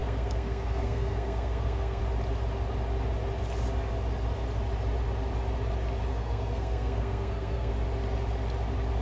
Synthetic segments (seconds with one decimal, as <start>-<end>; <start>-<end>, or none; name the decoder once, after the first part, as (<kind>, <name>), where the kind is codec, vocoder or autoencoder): 0.0-2.0 (codec, SNAC); 6.1-7.7